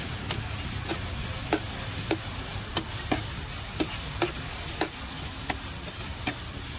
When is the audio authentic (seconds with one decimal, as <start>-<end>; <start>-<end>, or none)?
0.0-6.8